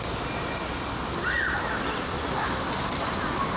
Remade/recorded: recorded